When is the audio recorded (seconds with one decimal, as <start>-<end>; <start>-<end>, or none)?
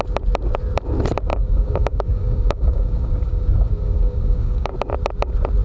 0.0-1.3; 4.7-5.6